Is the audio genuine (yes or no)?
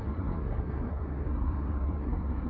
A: no